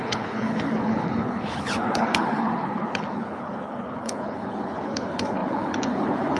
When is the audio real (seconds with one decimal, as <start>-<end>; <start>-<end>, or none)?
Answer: none